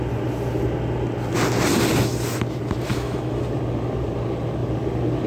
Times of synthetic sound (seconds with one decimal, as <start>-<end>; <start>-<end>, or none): 2.9-3.4

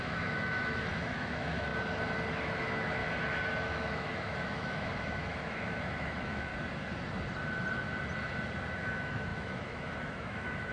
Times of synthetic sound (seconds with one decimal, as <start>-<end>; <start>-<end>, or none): 0.0-1.7; 2.4-3.0; 3.6-6.5; 8.7-10.7

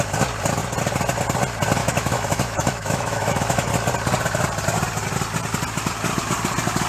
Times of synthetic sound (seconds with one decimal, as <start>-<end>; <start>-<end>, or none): 1.8-3.7

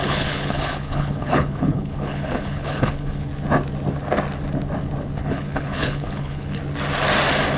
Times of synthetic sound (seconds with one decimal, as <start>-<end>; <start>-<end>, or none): 0.0-3.3; 5.2-6.6

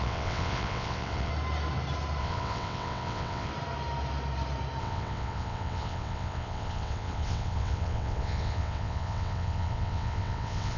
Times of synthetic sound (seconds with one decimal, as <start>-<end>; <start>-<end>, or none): 0.0-1.3; 2.2-3.5; 4.8-10.8

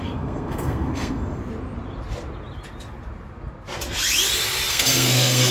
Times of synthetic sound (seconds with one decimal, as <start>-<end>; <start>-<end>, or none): 0.0-1.4; 4.7-5.5

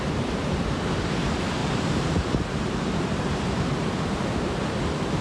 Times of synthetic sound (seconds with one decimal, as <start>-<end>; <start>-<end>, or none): 1.6-4.7